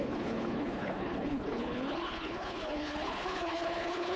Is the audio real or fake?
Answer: fake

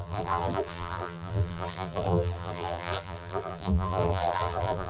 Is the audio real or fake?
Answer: fake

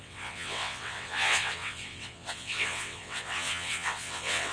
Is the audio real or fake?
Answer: fake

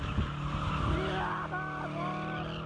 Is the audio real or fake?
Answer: real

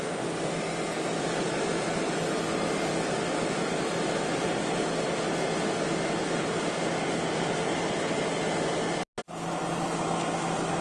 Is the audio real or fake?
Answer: real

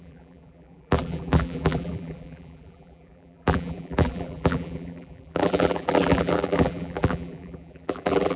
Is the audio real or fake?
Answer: fake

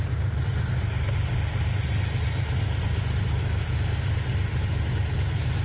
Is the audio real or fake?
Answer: real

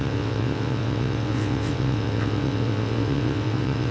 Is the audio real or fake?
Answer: fake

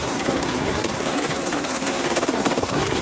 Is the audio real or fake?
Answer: fake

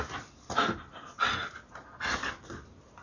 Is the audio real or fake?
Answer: real